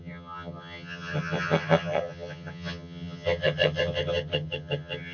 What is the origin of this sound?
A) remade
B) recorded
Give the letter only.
A